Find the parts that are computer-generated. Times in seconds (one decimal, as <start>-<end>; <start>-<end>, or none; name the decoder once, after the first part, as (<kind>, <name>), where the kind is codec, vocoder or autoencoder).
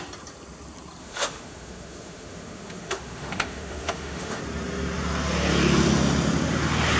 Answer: 1.0-4.4 (autoencoder, DAC-VAE)